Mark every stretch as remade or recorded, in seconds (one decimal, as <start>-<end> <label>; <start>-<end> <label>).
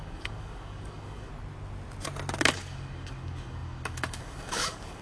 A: 0.0-1.3 remade; 1.3-2.5 recorded; 2.5-5.0 remade